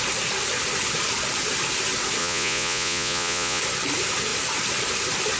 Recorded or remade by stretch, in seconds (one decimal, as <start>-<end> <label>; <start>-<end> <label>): 0.0-2.2 recorded; 2.2-3.6 remade; 3.6-5.4 recorded